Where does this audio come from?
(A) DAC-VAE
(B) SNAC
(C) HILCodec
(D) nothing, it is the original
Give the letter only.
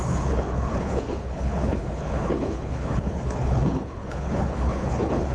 C